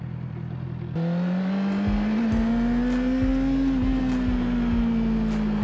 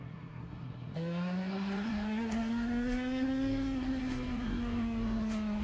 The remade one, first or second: second